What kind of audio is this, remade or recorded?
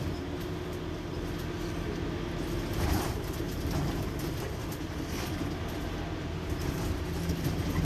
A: recorded